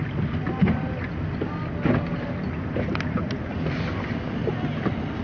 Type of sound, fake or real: real